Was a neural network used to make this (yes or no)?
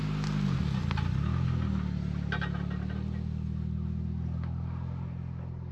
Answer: no